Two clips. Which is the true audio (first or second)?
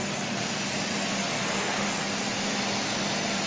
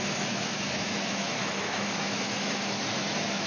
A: first